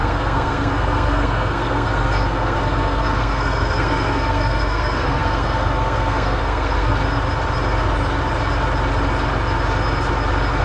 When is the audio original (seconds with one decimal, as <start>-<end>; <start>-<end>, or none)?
6.9-10.6